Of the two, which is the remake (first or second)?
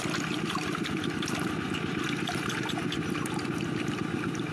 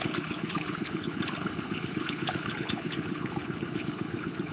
second